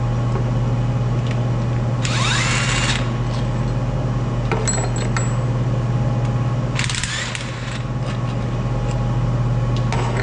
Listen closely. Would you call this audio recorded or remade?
recorded